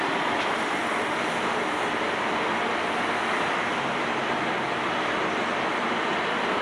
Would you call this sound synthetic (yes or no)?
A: no